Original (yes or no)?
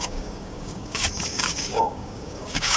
no